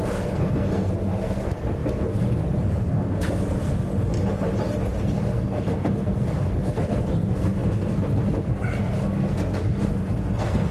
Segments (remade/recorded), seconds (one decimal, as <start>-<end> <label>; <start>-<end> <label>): 0.0-3.9 remade; 3.9-5.0 recorded; 5.0-10.7 remade